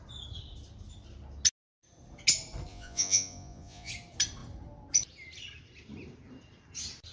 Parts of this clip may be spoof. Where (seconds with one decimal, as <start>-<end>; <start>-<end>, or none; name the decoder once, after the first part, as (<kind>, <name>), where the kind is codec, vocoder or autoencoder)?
2.7-3.9 (vocoder, Vocos)